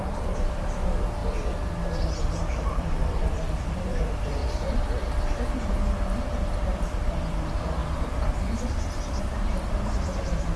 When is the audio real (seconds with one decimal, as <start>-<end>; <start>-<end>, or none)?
1.2-2.4; 7.8-9.2